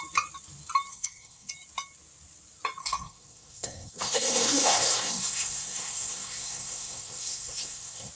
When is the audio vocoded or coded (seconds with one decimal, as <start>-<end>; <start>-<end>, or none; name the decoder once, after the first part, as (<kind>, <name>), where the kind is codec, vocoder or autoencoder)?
0.9-1.5 (codec, SNAC); 2.8-8.1